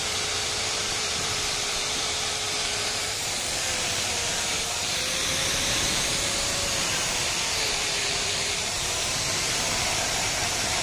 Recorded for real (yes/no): no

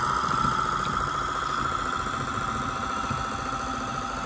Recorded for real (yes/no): yes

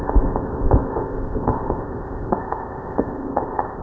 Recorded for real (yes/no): no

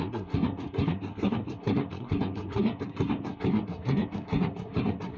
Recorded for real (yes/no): no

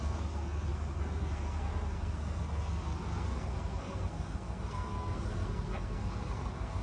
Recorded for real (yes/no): no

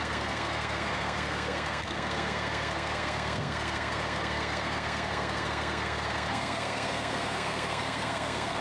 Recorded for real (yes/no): no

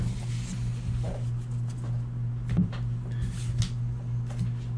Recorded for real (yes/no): yes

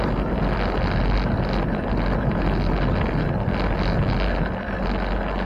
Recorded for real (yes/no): yes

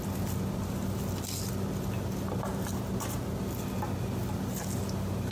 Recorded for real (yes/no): yes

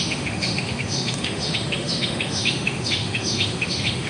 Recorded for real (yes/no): no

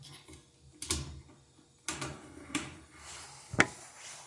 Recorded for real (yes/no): yes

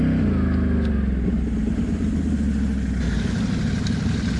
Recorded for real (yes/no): yes